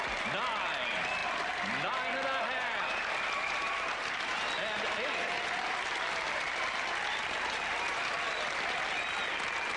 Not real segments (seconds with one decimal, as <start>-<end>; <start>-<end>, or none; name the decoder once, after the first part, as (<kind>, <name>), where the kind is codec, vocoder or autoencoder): none